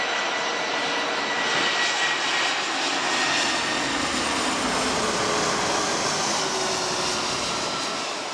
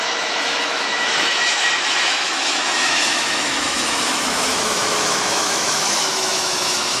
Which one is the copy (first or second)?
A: second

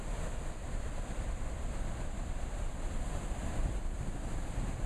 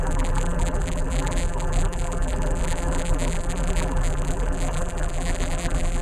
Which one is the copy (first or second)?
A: second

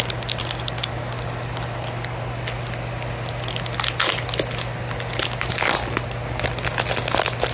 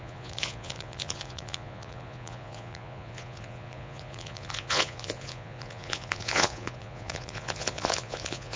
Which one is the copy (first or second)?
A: second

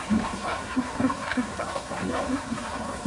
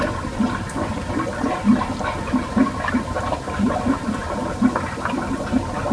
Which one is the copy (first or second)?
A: first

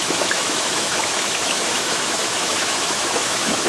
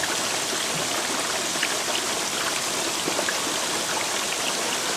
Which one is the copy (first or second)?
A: first